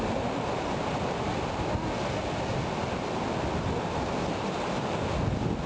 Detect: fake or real real